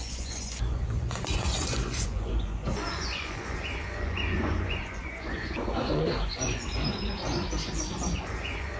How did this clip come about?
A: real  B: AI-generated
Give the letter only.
B